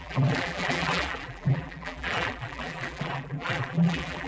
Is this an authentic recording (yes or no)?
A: no